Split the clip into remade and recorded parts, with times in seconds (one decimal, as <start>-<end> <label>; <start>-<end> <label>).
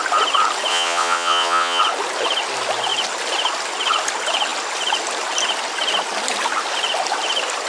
0.0-0.7 recorded; 0.7-1.8 remade; 1.8-7.7 recorded